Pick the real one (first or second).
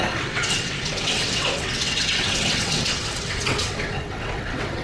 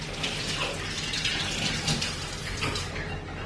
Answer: second